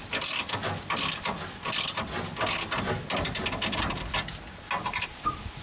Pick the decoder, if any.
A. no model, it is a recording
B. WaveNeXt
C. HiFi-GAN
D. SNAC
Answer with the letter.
A